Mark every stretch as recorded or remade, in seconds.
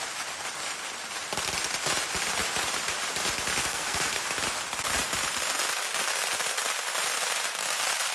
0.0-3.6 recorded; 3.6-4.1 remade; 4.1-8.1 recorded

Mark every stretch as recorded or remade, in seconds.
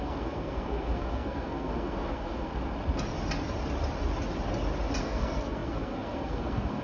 0.0-2.5 remade; 2.5-5.0 recorded; 5.0-6.8 remade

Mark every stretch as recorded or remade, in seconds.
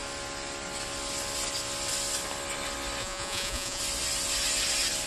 0.0-3.0 recorded; 3.0-3.8 remade; 3.8-5.1 recorded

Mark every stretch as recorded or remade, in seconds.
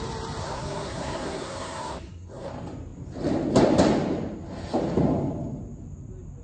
0.0-0.4 recorded; 0.4-2.5 remade; 2.5-6.4 recorded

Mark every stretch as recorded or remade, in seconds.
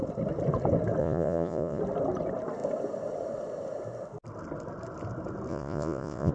0.0-1.0 recorded; 1.0-1.8 remade; 1.8-5.5 recorded; 5.5-6.3 remade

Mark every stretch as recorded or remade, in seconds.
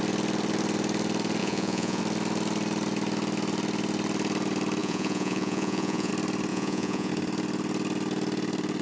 0.0-1.4 recorded; 1.4-2.0 remade; 2.0-4.8 recorded; 4.8-6.1 remade; 6.1-6.5 recorded; 6.5-7.1 remade; 7.1-8.8 recorded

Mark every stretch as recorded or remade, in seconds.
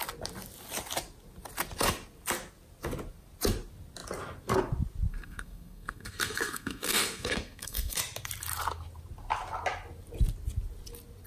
0.0-5.1 recorded; 5.1-8.0 remade; 8.0-11.3 recorded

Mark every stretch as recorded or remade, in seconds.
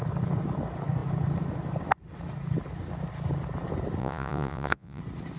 0.0-4.0 recorded; 4.0-5.0 remade; 5.0-5.4 recorded